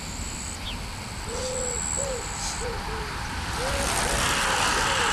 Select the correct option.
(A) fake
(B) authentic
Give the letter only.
B